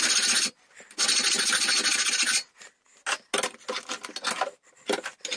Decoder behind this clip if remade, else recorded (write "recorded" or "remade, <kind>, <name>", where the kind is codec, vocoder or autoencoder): recorded